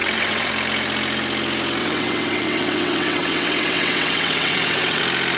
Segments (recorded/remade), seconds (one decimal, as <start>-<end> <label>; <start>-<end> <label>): 0.0-0.5 remade; 0.5-1.8 recorded; 1.8-5.0 remade; 5.0-5.4 recorded